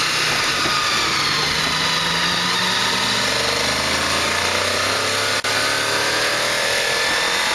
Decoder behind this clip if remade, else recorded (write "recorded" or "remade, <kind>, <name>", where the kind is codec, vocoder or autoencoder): recorded